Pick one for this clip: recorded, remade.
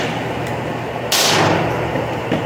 recorded